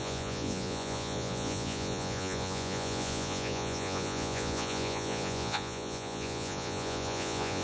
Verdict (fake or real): fake